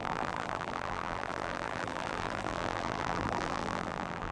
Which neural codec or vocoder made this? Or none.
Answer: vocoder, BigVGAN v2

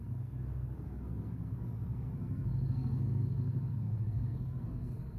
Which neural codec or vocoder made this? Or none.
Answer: codec, SNAC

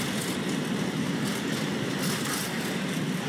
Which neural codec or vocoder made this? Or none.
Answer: none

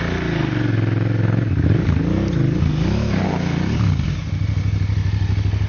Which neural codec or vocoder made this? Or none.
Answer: none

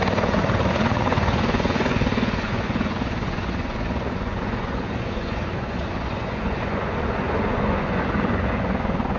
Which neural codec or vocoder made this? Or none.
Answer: vocoder, Vocos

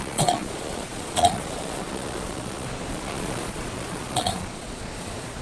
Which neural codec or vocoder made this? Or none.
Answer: vocoder, Vocos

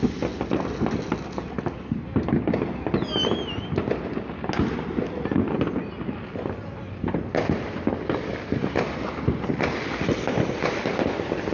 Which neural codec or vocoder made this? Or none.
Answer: none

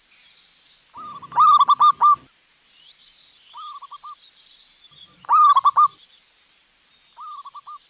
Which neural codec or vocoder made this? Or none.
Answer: none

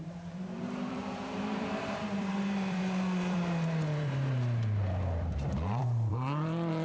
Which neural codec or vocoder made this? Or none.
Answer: vocoder, BigVGAN v2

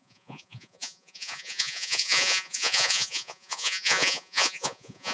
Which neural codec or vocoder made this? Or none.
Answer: vocoder, Vocos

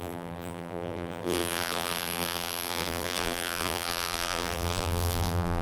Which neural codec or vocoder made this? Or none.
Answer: vocoder, BigVGAN v2